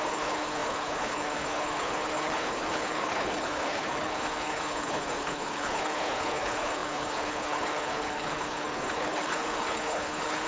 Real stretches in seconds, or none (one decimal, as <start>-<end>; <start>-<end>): none